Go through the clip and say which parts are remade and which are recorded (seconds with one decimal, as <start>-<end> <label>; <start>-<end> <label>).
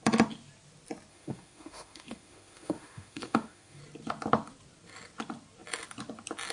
0.0-1.1 recorded; 1.1-3.8 remade; 3.8-6.5 recorded